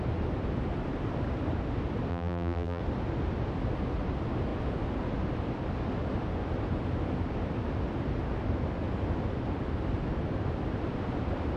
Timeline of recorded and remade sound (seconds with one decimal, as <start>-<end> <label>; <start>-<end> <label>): 0.0-2.1 recorded; 2.1-2.8 remade; 2.8-11.6 recorded